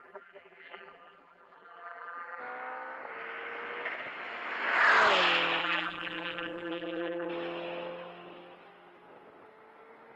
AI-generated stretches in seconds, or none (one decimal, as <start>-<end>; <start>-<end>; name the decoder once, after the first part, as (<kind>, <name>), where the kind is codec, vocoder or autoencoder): 0.0-2.4 (vocoder, BigVGAN v2); 5.6-7.3